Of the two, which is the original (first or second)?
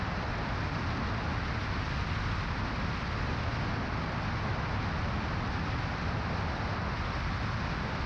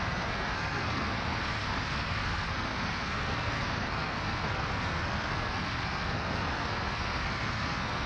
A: first